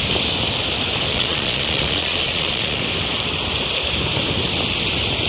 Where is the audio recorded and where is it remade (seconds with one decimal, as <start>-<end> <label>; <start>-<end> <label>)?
0.0-1.1 recorded; 1.1-2.8 remade; 2.8-5.3 recorded